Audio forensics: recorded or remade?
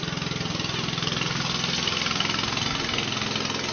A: recorded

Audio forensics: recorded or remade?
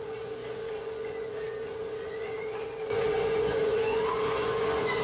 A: remade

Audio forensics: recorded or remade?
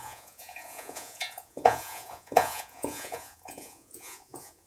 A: remade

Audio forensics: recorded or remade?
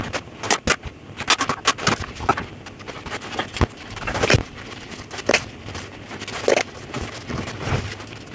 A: recorded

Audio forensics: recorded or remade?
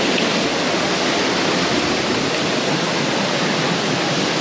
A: recorded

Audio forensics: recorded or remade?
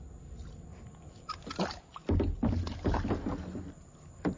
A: recorded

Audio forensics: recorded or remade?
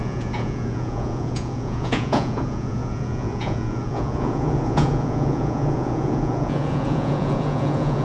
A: remade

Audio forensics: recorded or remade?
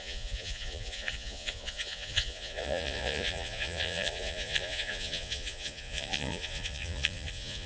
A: remade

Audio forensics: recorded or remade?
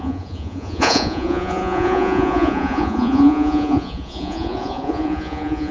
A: remade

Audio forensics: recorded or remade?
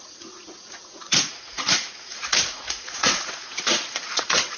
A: remade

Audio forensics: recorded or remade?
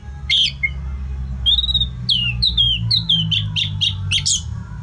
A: recorded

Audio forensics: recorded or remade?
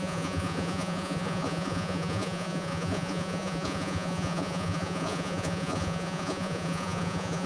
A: remade